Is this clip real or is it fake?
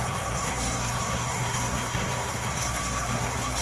fake